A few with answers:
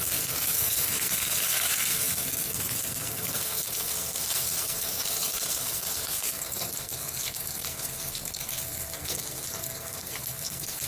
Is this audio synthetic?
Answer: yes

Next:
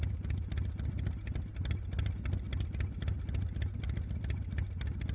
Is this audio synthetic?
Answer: no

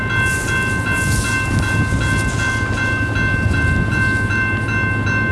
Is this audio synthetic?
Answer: no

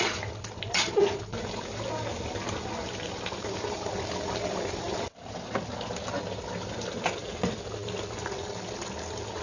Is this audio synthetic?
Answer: no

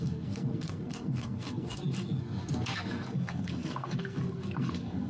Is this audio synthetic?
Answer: yes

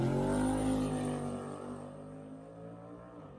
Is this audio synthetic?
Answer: no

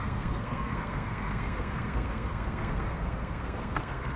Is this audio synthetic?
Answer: yes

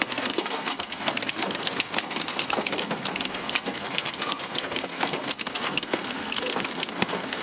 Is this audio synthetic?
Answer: yes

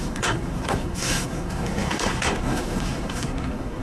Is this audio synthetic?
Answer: yes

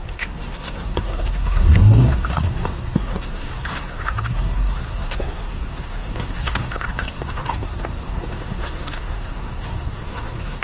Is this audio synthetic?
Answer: yes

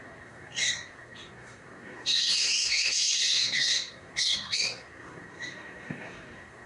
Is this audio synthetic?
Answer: yes